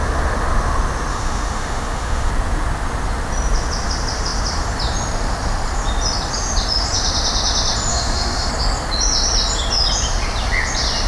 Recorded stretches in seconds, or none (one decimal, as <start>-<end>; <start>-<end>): 0.0-1.1; 2.3-7.9; 8.5-11.1